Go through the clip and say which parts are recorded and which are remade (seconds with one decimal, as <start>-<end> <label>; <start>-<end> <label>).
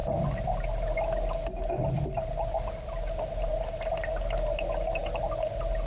0.0-5.9 recorded